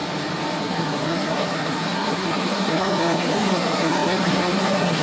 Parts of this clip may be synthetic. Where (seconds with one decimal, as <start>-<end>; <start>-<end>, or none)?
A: 0.6-5.0